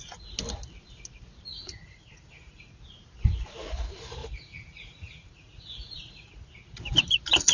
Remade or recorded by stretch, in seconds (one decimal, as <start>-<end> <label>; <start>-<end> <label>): 0.0-1.5 recorded; 1.5-2.6 remade; 2.6-4.2 recorded; 4.2-6.5 remade; 6.5-7.5 recorded